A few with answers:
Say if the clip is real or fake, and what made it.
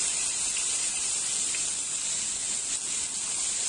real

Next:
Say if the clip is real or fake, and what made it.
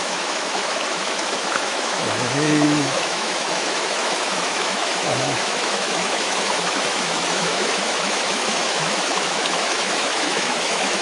fake, autoencoder, DAC-VAE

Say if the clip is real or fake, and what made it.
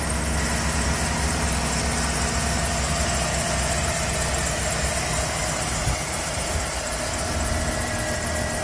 real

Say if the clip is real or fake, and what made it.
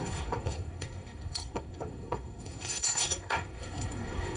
fake, codec, SNAC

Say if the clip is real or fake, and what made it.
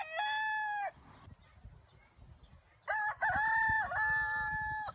real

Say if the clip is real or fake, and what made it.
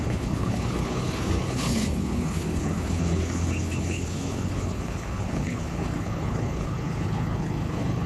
fake, codec, HILCodec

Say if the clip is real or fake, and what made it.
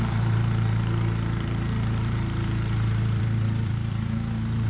fake, vocoder, BigVGAN v2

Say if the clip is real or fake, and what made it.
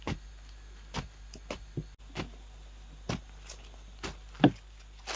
real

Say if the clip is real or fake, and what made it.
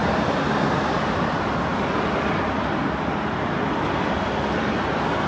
real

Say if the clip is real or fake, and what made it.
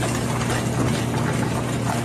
real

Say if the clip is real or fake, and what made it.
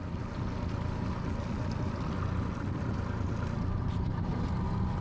real